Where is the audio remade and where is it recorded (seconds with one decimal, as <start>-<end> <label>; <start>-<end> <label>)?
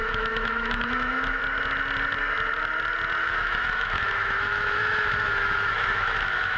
0.0-1.4 remade; 1.4-3.2 recorded; 3.2-6.6 remade